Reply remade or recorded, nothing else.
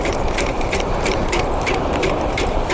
remade